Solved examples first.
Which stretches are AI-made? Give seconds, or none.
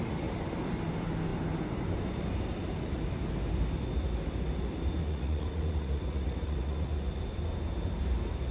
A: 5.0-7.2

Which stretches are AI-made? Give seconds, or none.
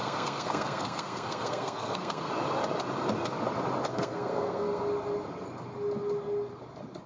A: 0.0-2.3; 3.9-4.8